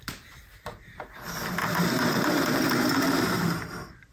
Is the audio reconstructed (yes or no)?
yes